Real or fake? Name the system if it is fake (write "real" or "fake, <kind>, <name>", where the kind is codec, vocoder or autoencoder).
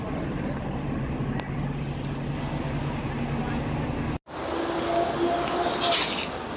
real